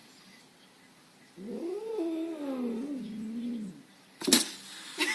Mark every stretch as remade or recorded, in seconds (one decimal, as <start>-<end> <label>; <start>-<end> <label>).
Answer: 0.0-5.1 recorded